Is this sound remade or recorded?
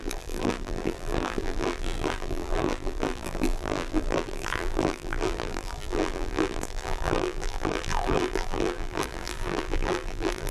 remade